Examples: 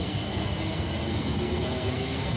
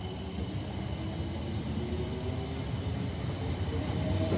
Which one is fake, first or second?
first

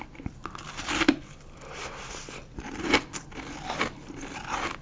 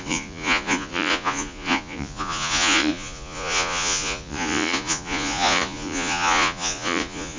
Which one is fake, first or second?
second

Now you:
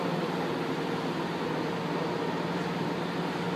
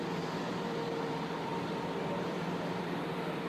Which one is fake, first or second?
second